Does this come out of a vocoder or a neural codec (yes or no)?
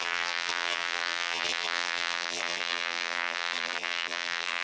yes